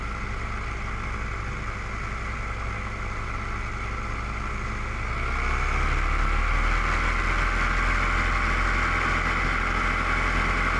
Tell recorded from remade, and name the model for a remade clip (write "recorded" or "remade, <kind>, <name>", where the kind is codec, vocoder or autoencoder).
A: recorded